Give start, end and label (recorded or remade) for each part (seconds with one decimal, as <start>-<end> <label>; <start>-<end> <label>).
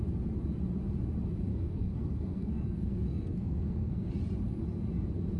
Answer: 0.0-1.5 recorded; 1.5-4.1 remade; 4.1-5.4 recorded